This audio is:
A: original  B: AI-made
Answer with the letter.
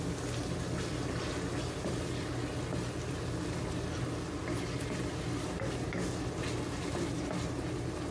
A